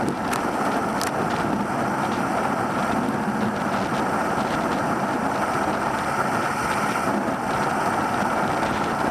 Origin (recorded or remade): recorded